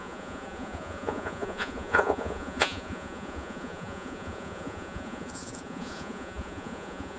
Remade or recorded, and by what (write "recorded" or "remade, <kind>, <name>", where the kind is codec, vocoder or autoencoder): remade, vocoder, Vocos